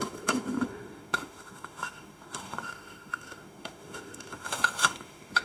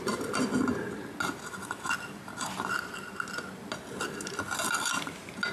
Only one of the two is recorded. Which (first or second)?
second